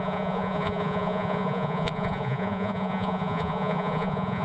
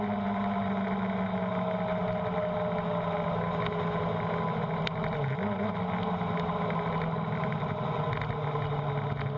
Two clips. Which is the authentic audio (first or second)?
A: second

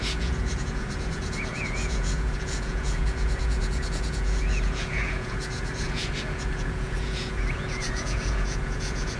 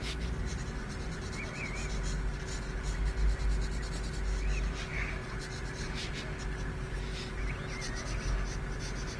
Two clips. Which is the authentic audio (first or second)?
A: second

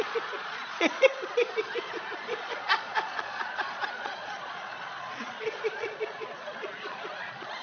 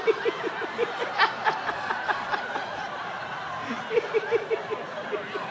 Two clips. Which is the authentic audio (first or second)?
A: second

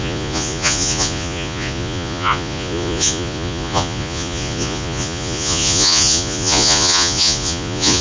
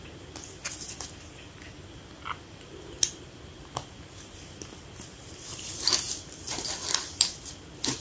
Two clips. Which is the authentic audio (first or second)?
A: second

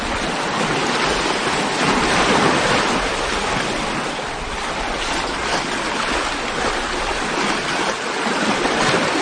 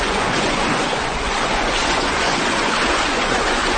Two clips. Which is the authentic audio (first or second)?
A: first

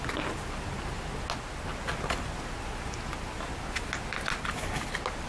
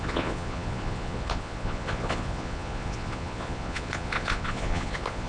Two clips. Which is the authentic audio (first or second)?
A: first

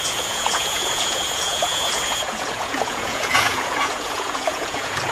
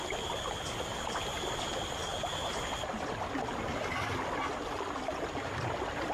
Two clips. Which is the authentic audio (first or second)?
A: second